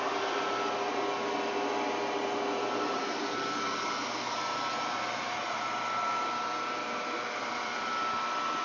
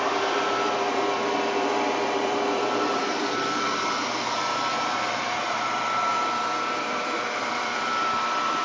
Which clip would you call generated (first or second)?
second